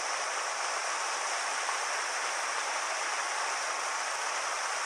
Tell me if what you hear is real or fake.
real